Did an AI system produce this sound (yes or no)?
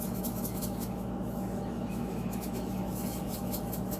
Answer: yes